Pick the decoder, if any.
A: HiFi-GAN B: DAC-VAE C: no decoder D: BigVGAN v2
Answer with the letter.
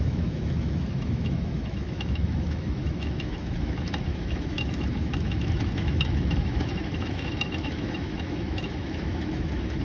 B